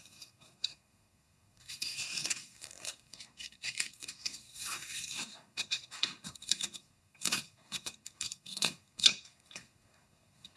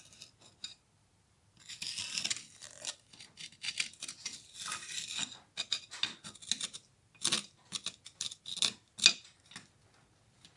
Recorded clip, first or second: second